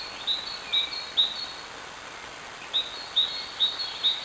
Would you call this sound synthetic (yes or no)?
no